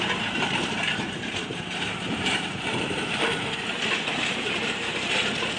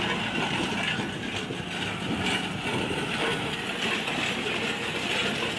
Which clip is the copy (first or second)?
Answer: first